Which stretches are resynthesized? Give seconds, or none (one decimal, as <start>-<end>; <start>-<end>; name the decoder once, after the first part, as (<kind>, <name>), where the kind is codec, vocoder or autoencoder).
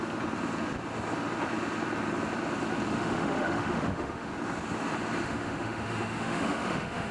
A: 2.9-4.3 (autoencoder, DAC-VAE); 5.2-7.1